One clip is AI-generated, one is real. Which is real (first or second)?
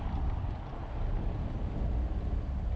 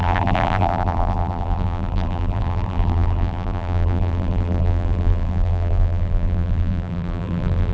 first